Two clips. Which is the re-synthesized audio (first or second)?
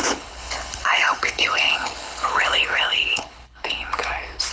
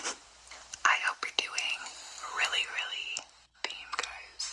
first